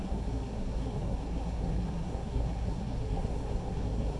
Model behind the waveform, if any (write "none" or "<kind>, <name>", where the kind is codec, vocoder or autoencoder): codec, SNAC